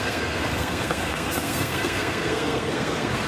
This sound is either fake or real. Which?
fake